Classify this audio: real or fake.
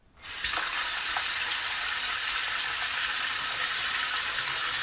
real